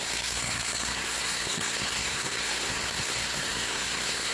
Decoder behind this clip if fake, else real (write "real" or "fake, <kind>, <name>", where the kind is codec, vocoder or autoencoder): fake, codec, SNAC